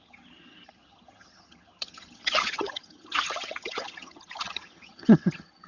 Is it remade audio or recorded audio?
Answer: remade